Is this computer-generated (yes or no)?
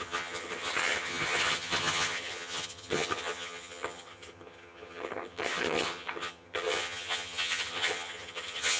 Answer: yes